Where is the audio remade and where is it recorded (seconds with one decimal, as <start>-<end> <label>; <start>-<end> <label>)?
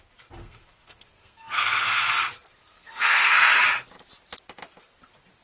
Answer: 0.0-0.4 recorded; 0.4-2.3 remade; 2.3-2.7 recorded; 2.7-3.6 remade; 3.6-5.4 recorded